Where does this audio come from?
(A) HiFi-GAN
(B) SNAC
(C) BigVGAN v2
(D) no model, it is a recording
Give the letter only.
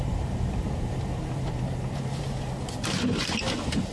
C